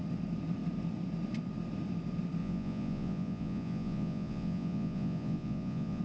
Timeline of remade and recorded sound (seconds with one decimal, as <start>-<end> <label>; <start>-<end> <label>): 0.0-2.4 recorded; 2.4-6.0 remade